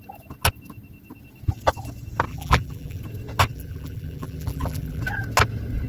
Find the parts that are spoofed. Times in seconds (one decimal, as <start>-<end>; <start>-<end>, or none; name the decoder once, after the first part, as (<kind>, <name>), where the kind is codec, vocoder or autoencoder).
2.3-3.0 (vocoder, BigVGAN v2); 3.5-5.0